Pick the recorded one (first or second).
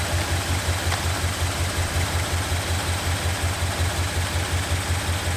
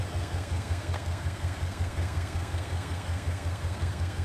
first